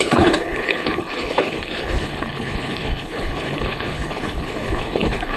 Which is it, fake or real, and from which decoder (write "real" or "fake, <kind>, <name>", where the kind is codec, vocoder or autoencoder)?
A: fake, codec, HILCodec